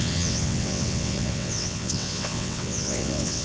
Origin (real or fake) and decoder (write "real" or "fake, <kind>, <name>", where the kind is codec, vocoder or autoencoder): fake, vocoder, WaveNeXt